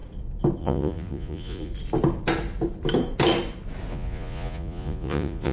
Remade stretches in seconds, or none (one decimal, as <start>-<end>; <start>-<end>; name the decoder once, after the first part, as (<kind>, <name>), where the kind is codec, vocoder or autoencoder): 0.6-1.7 (vocoder, Vocos); 3.9-5.5